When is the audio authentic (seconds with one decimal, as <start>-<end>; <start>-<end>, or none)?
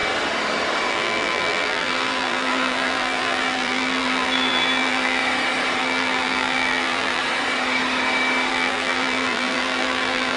0.0-0.9; 5.2-5.8; 7.2-8.5